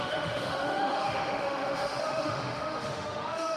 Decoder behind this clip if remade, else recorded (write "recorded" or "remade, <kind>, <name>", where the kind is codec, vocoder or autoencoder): remade, autoencoder, DAC-VAE